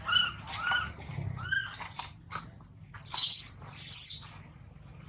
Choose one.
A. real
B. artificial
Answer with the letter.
A